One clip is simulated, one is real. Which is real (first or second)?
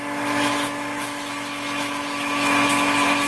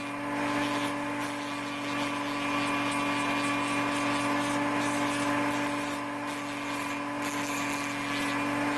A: second